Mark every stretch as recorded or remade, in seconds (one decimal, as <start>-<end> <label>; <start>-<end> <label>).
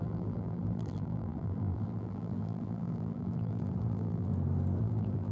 0.0-4.3 remade; 4.3-4.8 recorded; 4.8-5.3 remade